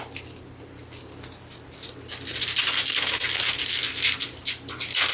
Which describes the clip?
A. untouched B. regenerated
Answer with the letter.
A